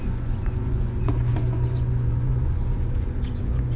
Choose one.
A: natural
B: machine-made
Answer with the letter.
B